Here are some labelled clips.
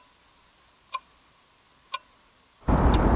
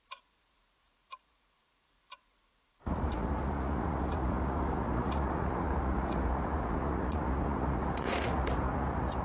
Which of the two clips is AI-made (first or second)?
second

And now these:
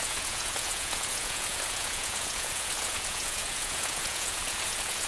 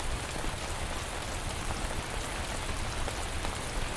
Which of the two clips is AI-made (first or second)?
first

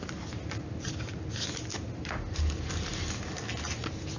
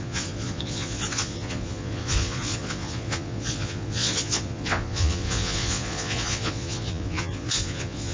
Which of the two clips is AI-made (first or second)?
second